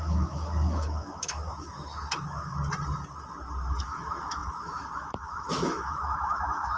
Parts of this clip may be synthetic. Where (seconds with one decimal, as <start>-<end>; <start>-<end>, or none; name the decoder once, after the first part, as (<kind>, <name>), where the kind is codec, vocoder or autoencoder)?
0.0-2.5 (autoencoder, DAC-VAE); 3.8-6.8